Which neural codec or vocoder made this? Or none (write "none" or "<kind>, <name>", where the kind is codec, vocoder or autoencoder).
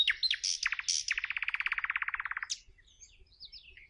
none